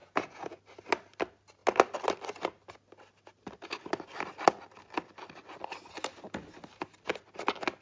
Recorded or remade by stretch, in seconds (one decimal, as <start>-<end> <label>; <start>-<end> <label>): 0.0-0.6 remade; 0.6-7.8 recorded